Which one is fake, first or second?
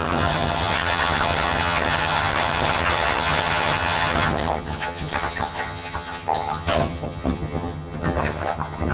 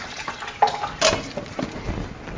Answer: first